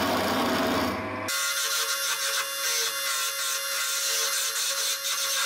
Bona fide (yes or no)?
yes